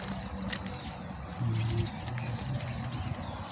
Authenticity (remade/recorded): recorded